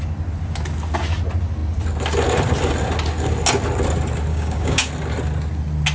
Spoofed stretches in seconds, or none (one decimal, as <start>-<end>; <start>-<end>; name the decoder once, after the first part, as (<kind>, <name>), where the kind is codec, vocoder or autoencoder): 4.3-4.9 (codec, DAC)